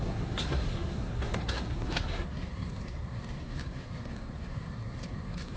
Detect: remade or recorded remade